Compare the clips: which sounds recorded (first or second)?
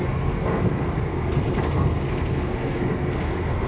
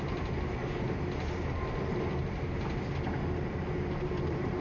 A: second